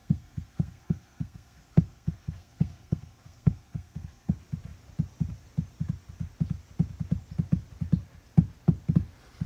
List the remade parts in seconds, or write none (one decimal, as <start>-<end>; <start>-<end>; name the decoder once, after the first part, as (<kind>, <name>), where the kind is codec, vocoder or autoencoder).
0.0-4.3 (codec, SNAC)